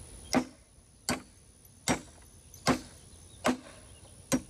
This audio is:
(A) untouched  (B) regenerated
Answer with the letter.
A